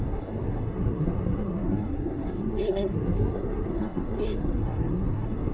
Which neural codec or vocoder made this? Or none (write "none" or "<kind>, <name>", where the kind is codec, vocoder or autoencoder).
codec, SNAC